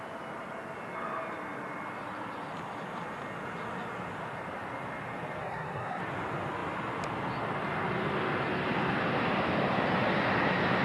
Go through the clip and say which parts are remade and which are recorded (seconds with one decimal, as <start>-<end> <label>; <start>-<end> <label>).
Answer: 0.0-5.4 recorded; 5.4-6.0 remade; 6.0-10.8 recorded